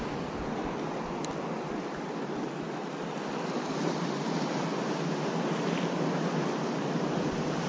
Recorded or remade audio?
recorded